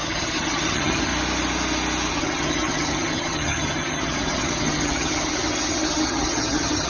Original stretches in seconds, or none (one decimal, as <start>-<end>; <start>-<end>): 1.1-2.1